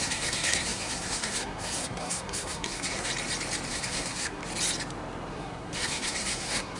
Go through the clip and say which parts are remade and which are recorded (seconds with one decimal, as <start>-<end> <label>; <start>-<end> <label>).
0.0-3.1 remade; 3.1-3.7 recorded; 3.7-4.4 remade; 4.4-5.3 recorded; 5.3-6.8 remade